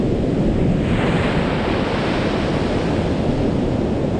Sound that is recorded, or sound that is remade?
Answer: recorded